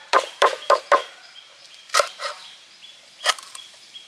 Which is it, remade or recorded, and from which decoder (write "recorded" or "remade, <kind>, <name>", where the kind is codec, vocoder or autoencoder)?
remade, vocoder, BigVGAN v2